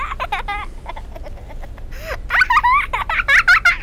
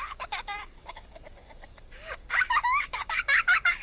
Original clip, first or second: first